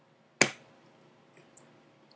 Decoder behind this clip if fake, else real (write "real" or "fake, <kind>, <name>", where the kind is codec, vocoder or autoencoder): real